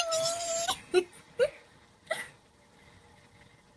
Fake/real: real